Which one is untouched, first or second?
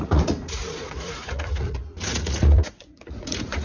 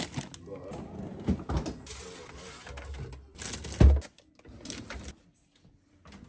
second